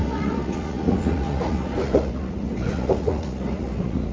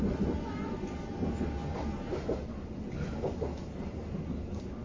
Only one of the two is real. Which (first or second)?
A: second